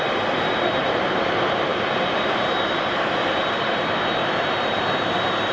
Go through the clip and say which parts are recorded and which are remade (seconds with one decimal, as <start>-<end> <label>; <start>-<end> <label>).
0.0-1.7 remade; 1.7-2.6 recorded; 2.6-5.5 remade